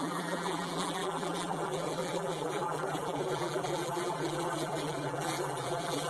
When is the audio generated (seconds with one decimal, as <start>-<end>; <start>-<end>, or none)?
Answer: 0.0-6.1